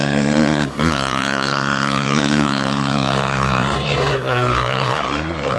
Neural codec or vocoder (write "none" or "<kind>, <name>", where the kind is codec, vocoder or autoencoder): codec, SNAC